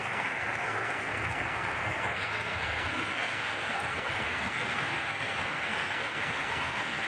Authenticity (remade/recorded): remade